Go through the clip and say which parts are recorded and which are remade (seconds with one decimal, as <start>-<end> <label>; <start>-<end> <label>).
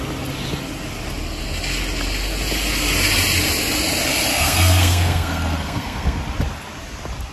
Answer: 0.0-4.3 recorded; 4.3-6.2 remade; 6.2-7.3 recorded